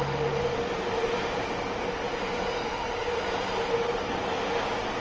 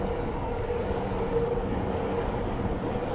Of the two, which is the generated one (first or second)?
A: second